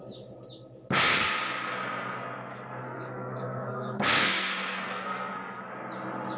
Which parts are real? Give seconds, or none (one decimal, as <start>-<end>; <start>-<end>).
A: 0.0-2.5; 5.7-6.4